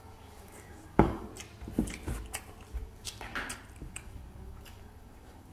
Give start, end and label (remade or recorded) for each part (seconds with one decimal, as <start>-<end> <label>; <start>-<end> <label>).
0.0-1.3 remade; 1.3-2.7 recorded; 2.7-3.3 remade; 3.3-3.8 recorded; 3.8-5.5 remade